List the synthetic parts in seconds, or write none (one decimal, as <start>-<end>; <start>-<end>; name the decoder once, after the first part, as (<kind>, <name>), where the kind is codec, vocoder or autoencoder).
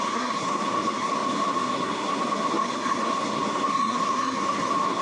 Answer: 0.0-5.0 (codec, SNAC)